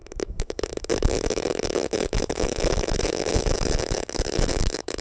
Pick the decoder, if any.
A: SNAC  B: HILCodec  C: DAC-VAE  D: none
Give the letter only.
C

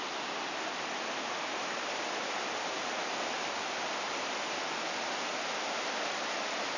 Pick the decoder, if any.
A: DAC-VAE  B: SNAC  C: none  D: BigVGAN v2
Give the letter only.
C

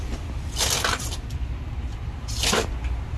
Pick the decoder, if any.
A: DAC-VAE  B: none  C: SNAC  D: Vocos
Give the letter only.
B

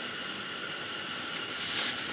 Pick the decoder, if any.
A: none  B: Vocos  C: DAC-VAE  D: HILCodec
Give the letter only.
A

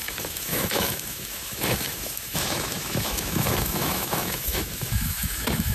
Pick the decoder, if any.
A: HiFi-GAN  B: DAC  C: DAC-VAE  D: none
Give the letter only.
C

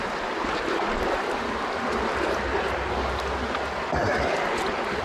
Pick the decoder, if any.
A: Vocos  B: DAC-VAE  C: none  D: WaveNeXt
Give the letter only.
C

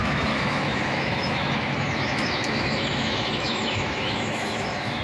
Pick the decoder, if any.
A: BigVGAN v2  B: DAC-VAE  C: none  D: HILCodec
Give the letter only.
B